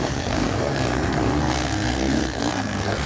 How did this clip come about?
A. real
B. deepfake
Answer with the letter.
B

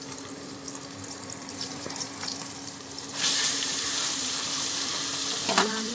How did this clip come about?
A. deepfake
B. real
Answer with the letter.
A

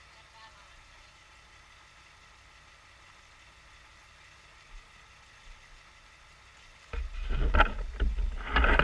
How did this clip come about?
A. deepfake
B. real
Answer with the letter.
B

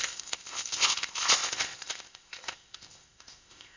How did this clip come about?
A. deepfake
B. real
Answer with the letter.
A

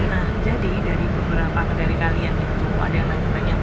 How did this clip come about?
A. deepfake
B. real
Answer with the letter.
A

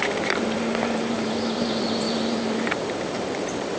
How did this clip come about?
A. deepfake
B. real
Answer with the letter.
A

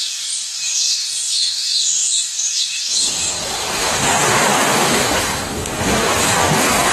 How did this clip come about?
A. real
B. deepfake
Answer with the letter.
B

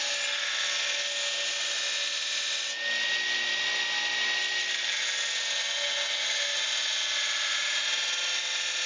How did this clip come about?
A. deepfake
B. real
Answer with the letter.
B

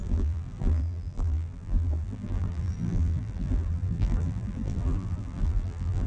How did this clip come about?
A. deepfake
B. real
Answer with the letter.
A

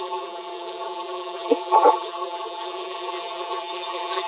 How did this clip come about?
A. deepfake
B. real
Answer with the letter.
A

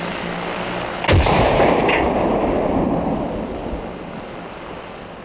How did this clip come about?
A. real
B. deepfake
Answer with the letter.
A